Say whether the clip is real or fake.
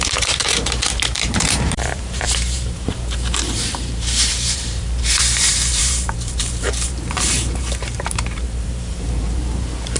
fake